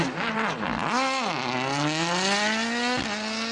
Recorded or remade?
recorded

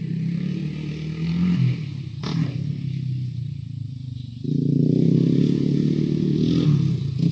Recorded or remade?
recorded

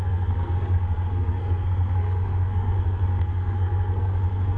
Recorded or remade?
remade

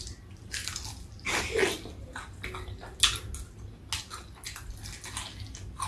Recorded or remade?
recorded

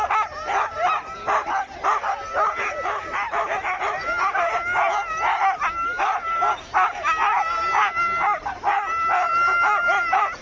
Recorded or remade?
recorded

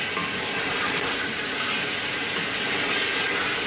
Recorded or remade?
recorded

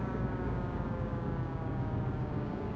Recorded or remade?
remade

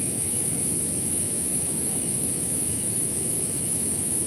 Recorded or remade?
remade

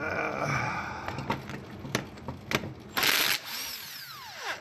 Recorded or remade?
recorded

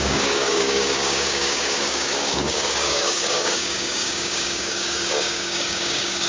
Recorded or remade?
remade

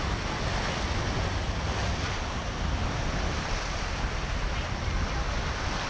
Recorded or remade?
recorded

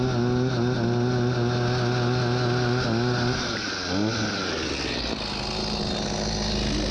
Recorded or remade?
recorded